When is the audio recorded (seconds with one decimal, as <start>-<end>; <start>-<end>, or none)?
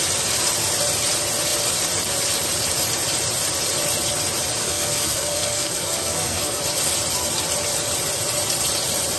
0.0-4.6; 6.6-9.2